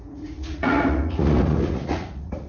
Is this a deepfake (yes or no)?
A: yes